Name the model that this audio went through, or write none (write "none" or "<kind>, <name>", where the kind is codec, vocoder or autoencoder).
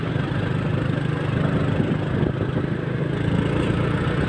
none